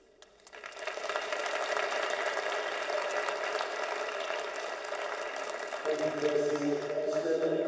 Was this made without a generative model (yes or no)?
yes